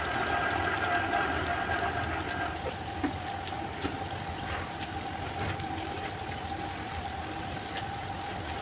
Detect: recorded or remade recorded